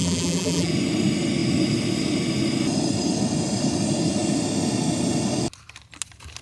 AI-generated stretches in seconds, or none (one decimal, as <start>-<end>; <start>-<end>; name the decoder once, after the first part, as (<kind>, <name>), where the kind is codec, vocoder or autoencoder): 0.0-0.7 (vocoder, BigVGAN v2)